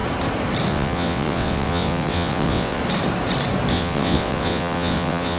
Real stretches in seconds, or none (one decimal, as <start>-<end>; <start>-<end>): 0.0-0.7; 2.8-3.7